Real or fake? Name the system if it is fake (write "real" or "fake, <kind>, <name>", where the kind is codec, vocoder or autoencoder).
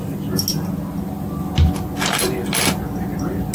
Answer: real